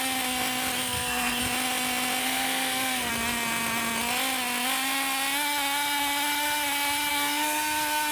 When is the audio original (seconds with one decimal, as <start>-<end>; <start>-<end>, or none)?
0.0-0.8; 1.4-2.2; 3.1-7.1